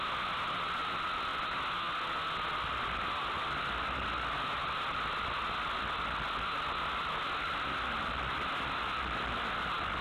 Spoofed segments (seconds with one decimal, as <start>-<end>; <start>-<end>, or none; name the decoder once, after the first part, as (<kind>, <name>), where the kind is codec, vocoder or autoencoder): none